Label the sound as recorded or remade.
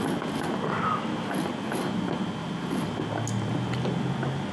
recorded